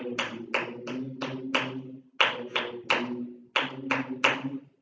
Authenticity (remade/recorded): recorded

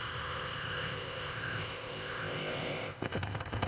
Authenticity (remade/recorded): remade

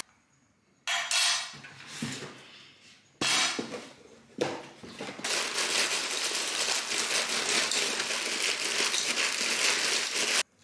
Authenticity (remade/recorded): recorded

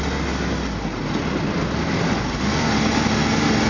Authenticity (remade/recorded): recorded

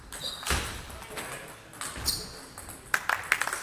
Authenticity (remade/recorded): recorded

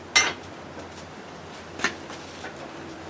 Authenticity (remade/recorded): recorded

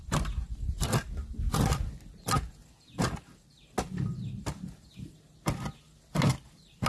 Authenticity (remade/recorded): recorded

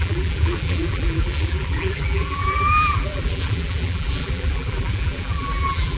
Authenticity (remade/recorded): remade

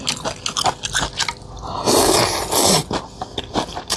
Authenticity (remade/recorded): recorded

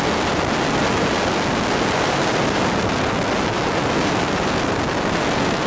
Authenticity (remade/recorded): recorded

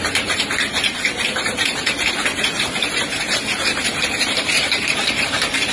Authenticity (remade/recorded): remade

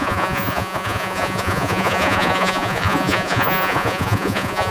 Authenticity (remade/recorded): remade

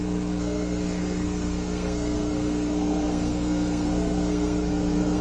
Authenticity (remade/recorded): remade